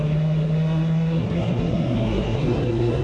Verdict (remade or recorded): remade